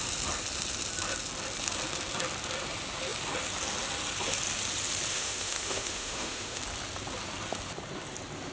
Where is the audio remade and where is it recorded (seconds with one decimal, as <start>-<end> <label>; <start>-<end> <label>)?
0.0-5.1 recorded; 5.1-6.6 remade; 6.6-8.5 recorded